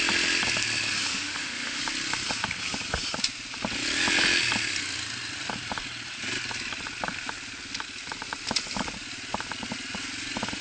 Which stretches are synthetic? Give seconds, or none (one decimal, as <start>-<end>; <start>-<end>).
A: 1.1-1.8